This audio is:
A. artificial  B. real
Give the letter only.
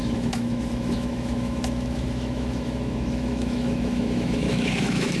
A